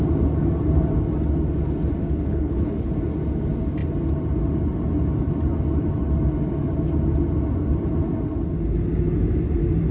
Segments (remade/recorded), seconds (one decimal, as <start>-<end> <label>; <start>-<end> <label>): 0.0-2.0 recorded; 2.0-2.9 remade; 2.9-9.9 recorded